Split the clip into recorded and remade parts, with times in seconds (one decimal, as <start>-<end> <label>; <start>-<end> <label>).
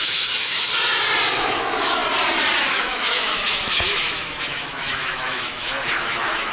0.0-0.7 remade; 0.7-1.3 recorded; 1.3-2.0 remade; 2.0-2.6 recorded; 2.6-6.5 remade